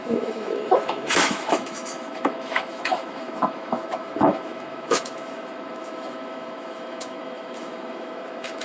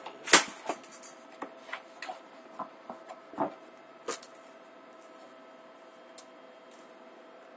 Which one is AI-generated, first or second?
first